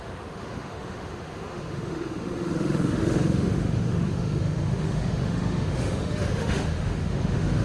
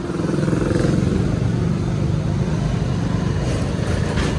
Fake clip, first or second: first